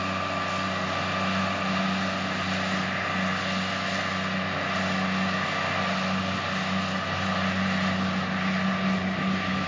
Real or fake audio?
real